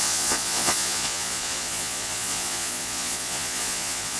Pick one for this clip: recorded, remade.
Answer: remade